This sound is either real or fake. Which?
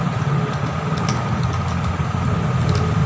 real